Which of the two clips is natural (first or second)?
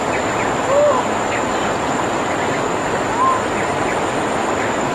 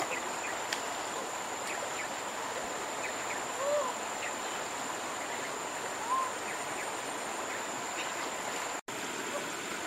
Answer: second